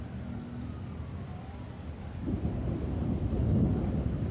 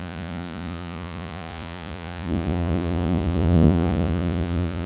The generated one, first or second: second